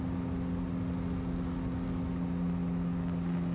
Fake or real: real